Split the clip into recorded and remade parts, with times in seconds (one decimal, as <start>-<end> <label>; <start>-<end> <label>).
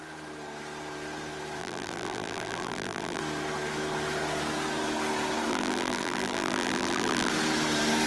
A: 0.0-1.6 recorded; 1.6-3.2 remade; 3.2-5.5 recorded; 5.5-7.3 remade; 7.3-8.1 recorded